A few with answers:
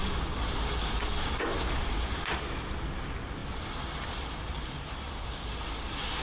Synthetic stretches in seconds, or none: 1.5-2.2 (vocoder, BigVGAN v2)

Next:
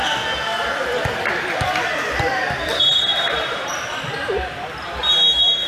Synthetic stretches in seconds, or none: 0.5-1.5 (vocoder, BigVGAN v2); 2.0-5.0

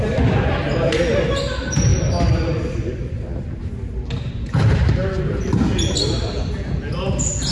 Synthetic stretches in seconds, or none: 5.0-6.5 (vocoder, BigVGAN v2)

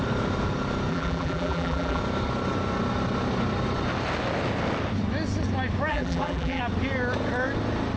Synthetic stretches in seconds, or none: 0.9-2.0 (vocoder, BigVGAN v2); 5.9-6.6